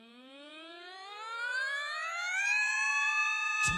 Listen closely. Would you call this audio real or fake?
fake